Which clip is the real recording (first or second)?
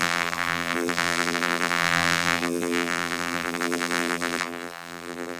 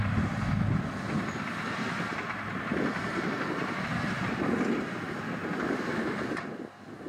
second